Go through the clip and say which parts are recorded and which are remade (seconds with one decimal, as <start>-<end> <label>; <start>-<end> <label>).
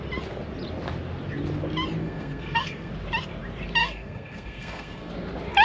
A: 0.0-2.0 recorded; 2.0-2.9 remade; 2.9-3.8 recorded; 3.8-5.1 remade; 5.1-5.6 recorded